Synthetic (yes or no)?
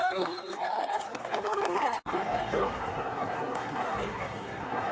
yes